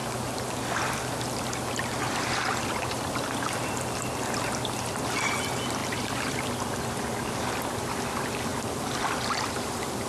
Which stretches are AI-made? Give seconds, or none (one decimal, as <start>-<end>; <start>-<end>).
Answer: 5.8-6.6; 8.5-10.1